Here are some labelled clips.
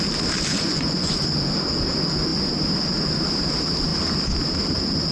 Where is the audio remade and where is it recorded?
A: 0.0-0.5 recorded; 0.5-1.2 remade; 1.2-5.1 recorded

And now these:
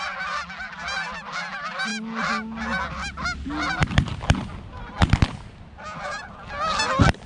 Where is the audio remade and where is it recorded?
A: 0.0-7.3 recorded

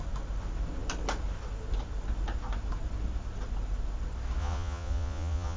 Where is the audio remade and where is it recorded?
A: 0.0-4.4 recorded; 4.4-5.6 remade

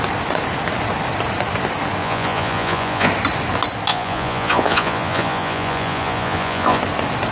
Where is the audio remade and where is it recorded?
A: 0.0-2.0 recorded; 2.0-3.1 remade; 3.1-3.9 recorded; 3.9-6.8 remade; 6.8-7.3 recorded